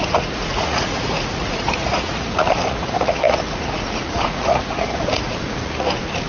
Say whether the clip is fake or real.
fake